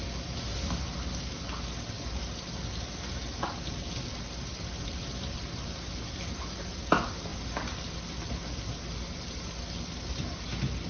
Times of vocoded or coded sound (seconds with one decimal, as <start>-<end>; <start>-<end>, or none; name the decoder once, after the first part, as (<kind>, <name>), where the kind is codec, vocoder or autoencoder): none